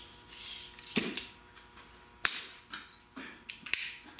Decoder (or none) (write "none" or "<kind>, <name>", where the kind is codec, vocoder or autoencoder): none